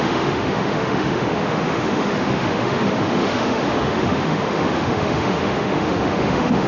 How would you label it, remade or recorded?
remade